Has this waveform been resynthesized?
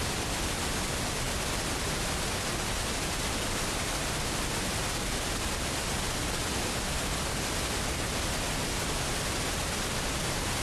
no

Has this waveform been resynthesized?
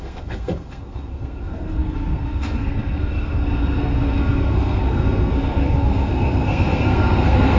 yes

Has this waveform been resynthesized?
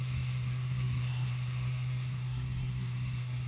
yes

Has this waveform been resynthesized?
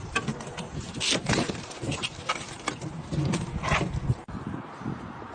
no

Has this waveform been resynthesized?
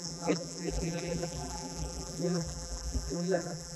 yes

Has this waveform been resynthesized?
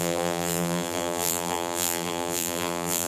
yes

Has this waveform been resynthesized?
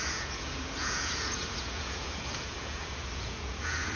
yes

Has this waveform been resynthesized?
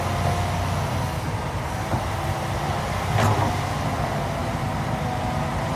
no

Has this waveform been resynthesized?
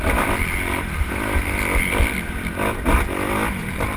yes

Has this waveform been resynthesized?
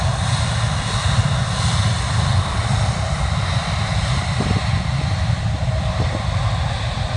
yes